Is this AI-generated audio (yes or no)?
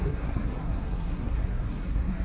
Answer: yes